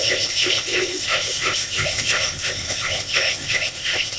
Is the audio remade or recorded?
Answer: remade